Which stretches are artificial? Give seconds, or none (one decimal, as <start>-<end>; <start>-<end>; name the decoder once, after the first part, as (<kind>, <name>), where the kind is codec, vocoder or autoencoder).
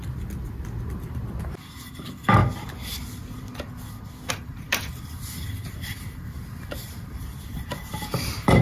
1.4-2.4 (vocoder, BigVGAN v2); 4.3-8.6